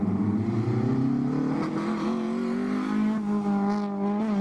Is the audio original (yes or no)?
yes